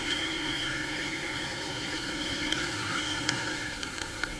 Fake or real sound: fake